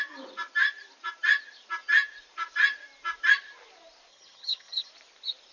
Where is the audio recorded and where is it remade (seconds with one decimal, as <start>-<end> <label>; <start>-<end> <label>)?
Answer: 0.0-4.1 recorded; 4.1-4.9 remade; 4.9-5.5 recorded